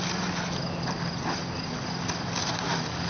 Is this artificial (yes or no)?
no